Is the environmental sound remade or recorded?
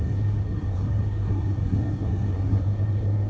remade